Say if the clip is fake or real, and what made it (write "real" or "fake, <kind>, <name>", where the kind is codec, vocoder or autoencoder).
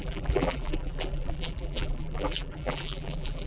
fake, vocoder, BigVGAN v2